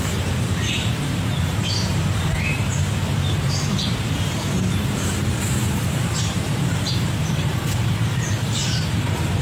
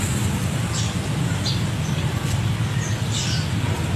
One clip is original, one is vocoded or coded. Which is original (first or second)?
second